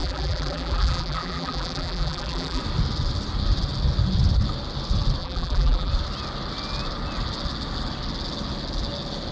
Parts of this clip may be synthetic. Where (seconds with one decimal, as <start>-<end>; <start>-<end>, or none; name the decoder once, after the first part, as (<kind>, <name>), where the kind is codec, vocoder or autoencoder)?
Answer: 0.0-2.6 (vocoder, BigVGAN v2); 5.2-5.9